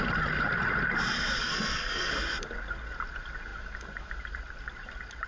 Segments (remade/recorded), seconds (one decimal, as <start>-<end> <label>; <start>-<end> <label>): 0.0-1.4 recorded; 1.4-2.1 remade; 2.1-5.3 recorded